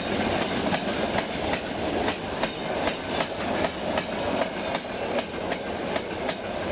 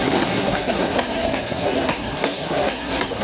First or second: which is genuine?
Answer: first